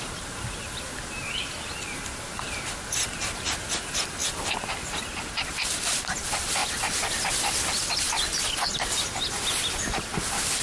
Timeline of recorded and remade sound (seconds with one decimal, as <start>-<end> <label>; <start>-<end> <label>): 0.0-10.6 recorded